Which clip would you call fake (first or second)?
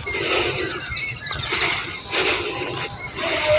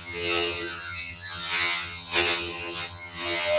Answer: second